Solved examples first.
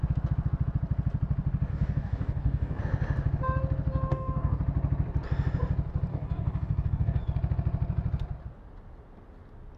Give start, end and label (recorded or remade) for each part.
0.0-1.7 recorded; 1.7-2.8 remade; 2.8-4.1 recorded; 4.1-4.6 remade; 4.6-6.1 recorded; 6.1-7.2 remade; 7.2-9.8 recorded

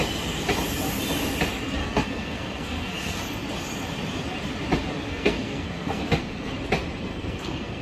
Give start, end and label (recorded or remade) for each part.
0.0-1.8 recorded; 1.8-3.2 remade; 3.2-5.0 recorded; 5.0-6.5 remade; 6.5-7.1 recorded; 7.1-7.8 remade

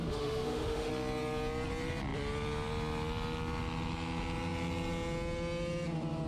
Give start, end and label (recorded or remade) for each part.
0.0-0.9 remade; 0.9-6.3 recorded